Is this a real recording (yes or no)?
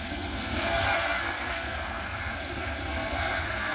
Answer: no